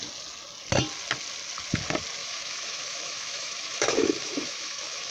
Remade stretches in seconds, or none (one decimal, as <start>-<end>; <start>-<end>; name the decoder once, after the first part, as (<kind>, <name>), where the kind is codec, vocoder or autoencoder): 2.2-5.1 (autoencoder, DAC-VAE)